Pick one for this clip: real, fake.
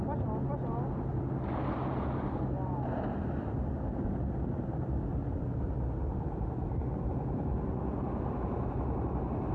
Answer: real